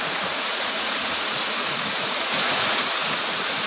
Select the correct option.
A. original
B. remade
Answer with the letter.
B